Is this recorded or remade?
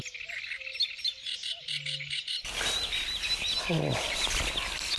recorded